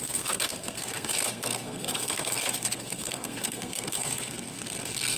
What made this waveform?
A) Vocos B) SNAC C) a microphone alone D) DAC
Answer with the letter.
B